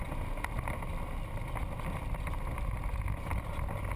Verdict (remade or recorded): recorded